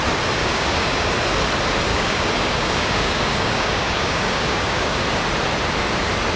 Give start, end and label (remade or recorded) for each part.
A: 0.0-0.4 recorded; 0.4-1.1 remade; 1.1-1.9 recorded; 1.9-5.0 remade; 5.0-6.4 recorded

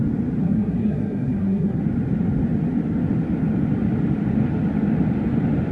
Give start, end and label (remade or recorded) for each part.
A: 0.0-0.4 recorded; 0.4-1.8 remade; 1.8-5.7 recorded

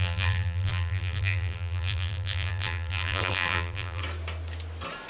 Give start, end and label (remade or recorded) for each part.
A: 0.0-4.0 remade; 4.0-5.1 recorded

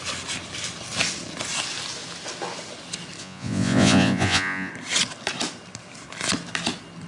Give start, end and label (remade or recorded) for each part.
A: 0.0-3.2 recorded; 3.2-4.7 remade; 4.7-7.1 recorded

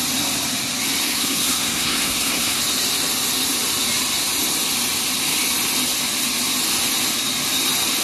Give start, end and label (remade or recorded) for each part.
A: 0.0-1.0 recorded; 1.0-2.6 remade; 2.6-8.0 recorded

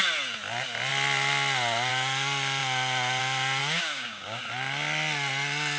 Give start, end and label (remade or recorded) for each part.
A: 0.0-3.6 recorded; 3.6-4.4 remade; 4.4-5.8 recorded

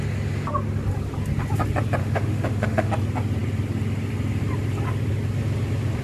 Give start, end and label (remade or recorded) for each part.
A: 0.0-2.0 recorded; 2.0-2.9 remade; 2.9-6.0 recorded